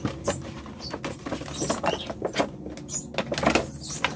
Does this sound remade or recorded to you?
recorded